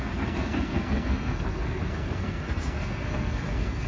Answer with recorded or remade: remade